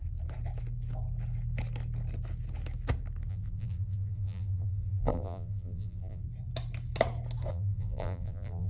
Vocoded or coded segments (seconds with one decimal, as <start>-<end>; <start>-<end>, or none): 3.3-6.2; 7.5-8.7